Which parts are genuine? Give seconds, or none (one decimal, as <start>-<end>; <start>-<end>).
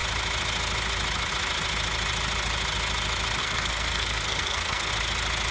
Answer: 0.0-3.4; 4.9-5.5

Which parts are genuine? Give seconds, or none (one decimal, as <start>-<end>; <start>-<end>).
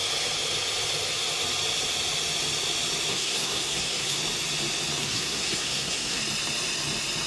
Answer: 0.0-3.1; 4.2-5.0; 6.2-7.3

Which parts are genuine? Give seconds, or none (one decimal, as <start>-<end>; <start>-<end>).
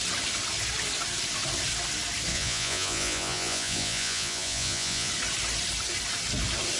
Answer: 0.0-2.3; 5.1-6.8